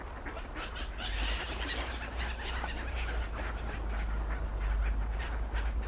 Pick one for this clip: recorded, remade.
recorded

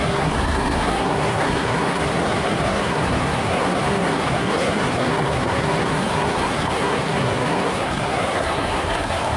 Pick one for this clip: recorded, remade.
remade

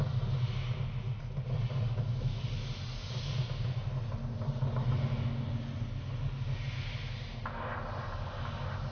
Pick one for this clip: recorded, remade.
recorded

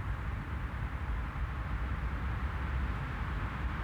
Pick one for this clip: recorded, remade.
recorded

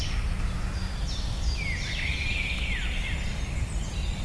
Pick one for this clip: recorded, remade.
recorded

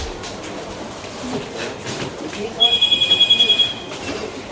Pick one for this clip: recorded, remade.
remade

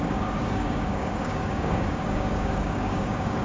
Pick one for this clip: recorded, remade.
remade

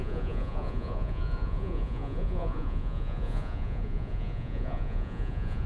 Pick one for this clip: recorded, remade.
remade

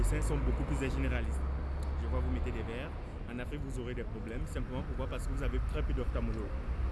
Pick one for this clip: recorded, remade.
recorded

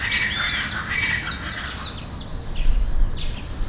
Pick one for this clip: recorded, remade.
recorded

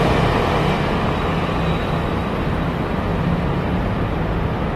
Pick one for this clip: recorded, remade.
recorded